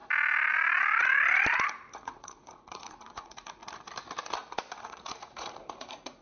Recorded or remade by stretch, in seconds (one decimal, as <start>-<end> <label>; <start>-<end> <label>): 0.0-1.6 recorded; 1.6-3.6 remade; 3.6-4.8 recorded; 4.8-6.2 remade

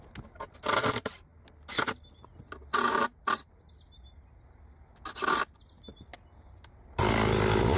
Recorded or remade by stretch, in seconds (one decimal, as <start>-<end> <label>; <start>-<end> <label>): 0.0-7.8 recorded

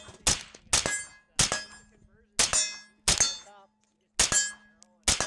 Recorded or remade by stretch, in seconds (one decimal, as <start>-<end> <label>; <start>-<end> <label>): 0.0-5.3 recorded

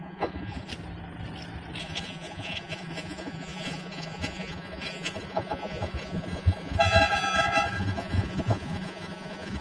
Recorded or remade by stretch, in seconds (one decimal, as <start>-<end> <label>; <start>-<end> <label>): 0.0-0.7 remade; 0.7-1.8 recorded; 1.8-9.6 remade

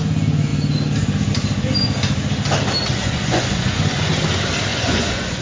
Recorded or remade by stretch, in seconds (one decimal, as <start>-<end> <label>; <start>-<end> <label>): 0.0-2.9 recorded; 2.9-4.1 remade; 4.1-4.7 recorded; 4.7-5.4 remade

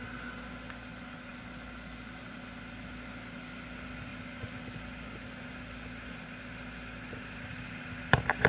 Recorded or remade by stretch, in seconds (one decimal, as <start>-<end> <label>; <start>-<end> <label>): 0.0-8.5 recorded